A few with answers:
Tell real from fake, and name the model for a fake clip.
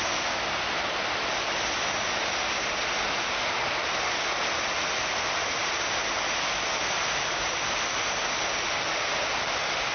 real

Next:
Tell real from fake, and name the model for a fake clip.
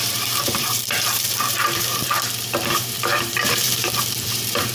fake, vocoder, BigVGAN v2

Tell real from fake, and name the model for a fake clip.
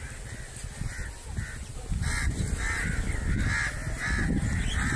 real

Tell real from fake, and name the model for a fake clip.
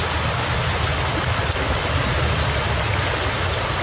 real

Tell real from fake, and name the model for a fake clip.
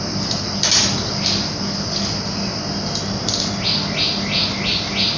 real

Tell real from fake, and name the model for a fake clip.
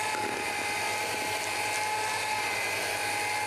real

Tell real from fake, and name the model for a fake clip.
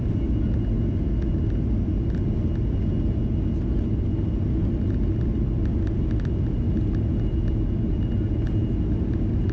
real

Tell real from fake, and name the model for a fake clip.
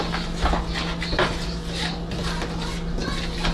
real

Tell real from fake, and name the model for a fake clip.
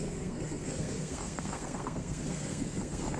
fake, codec, SNAC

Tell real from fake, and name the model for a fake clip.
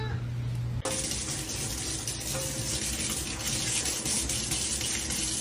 real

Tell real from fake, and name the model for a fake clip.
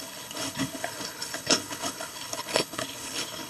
fake, codec, HILCodec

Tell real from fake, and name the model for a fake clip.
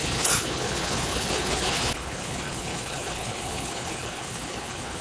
fake, codec, HILCodec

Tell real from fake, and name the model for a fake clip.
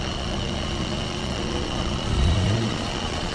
fake, vocoder, Vocos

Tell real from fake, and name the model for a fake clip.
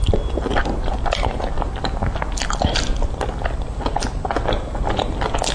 real